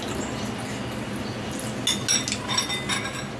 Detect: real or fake real